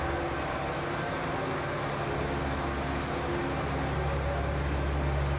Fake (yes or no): no